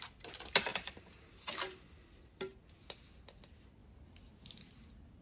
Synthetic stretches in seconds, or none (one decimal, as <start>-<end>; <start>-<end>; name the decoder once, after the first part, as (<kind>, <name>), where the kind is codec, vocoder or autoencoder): 0.7-1.5 (vocoder, BigVGAN v2)